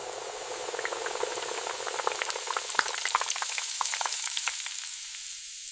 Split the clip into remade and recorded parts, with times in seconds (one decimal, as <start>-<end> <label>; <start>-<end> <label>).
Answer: 0.0-3.4 recorded; 3.4-4.5 remade; 4.5-5.7 recorded